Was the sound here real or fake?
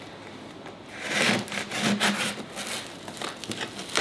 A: real